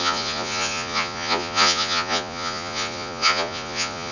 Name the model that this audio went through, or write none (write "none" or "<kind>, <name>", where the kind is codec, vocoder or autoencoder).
vocoder, Vocos